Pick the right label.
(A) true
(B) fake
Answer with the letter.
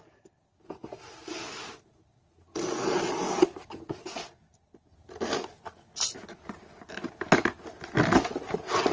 A